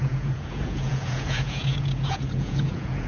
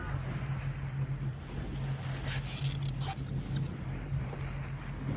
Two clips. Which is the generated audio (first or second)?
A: first